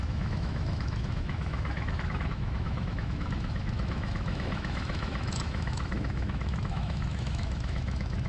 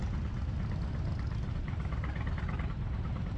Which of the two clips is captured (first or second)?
second